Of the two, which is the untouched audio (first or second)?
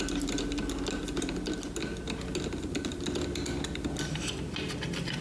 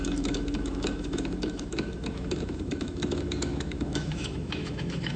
first